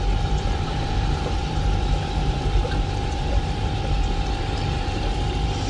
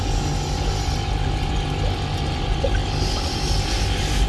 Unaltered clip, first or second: second